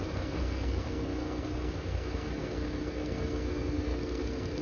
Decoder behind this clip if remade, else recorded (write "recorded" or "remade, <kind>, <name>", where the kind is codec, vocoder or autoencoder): remade, codec, SNAC